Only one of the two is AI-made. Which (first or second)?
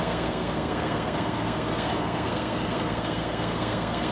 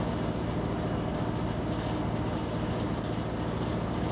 first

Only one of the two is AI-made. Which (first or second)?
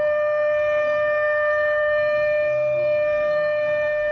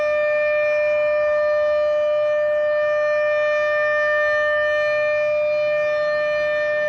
first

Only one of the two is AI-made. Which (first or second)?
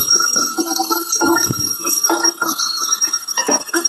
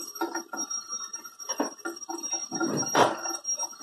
first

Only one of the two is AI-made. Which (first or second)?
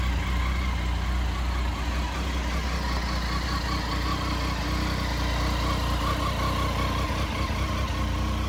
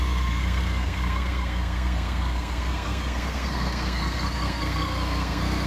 second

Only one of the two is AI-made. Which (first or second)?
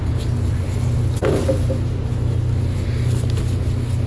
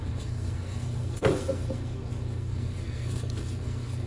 second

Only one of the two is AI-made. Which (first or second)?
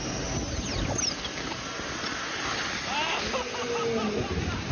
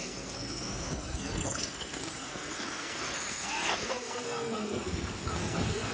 second